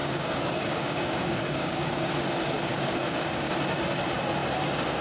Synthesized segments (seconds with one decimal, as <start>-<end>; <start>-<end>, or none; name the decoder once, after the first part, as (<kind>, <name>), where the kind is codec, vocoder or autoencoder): 0.0-2.1 (codec, DAC); 2.7-3.5